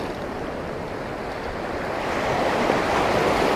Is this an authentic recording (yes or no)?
yes